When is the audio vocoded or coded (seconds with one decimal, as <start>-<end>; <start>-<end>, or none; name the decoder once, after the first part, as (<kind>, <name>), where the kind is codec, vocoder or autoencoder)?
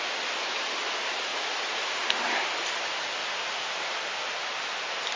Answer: 0.0-3.2 (vocoder, BigVGAN v2)